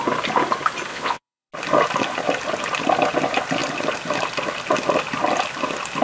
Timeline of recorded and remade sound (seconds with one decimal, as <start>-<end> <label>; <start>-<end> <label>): 0.0-0.9 recorded; 0.9-1.5 remade; 1.5-6.0 recorded